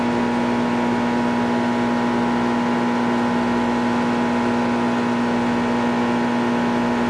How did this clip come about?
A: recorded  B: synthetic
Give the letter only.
A